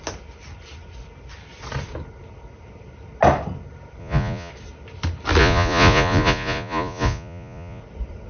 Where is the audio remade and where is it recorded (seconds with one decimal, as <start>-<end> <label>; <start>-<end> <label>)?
0.0-4.0 recorded; 4.0-4.5 remade; 4.5-5.4 recorded; 5.4-7.8 remade; 7.8-8.3 recorded